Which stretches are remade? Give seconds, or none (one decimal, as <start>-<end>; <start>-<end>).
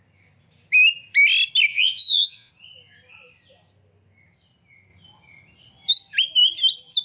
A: 1.7-2.5